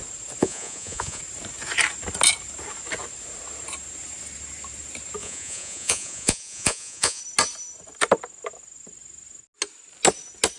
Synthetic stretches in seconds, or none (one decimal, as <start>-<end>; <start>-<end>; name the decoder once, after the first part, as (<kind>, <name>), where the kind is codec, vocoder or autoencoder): 0.4-1.2 (vocoder, Vocos); 5.2-7.2